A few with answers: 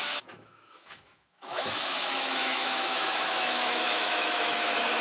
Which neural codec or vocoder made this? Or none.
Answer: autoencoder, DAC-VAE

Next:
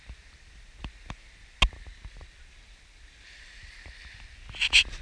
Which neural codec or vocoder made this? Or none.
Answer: none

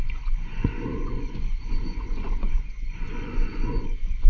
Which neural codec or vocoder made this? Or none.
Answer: vocoder, Vocos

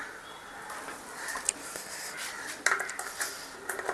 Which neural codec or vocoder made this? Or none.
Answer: none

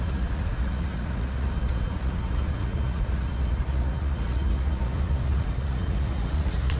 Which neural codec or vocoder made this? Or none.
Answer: vocoder, Vocos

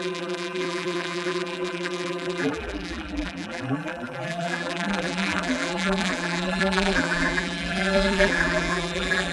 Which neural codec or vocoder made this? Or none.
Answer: vocoder, BigVGAN v2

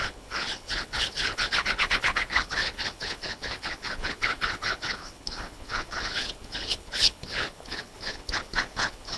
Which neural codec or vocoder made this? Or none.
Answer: codec, HILCodec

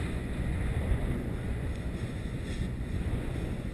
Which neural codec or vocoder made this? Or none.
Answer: vocoder, Vocos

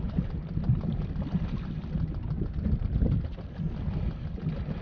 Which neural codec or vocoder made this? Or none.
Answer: none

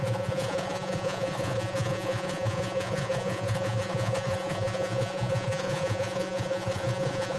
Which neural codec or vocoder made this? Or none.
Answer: vocoder, Vocos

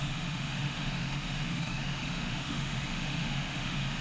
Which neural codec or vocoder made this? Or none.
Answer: autoencoder, DAC-VAE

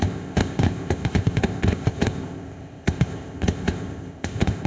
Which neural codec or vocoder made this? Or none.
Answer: codec, ZipCodec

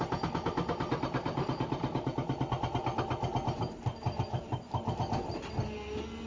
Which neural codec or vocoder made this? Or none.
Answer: none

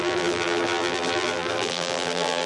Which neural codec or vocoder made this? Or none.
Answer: vocoder, BigVGAN v2